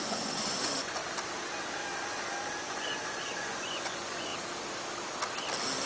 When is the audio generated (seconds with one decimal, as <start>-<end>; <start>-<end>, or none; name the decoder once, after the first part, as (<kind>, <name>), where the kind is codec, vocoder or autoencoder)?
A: 0.0-1.0 (vocoder, Vocos); 2.7-4.3